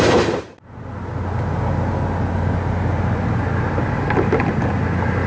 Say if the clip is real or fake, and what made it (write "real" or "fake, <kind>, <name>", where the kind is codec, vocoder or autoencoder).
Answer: real